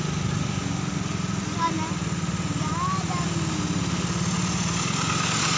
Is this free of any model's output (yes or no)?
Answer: yes